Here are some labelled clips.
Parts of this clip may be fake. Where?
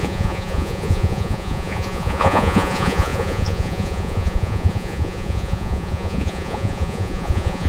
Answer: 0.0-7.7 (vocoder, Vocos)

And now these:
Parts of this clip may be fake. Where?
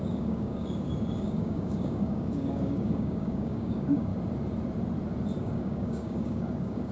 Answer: 0.0-4.1 (codec, DAC); 5.4-6.9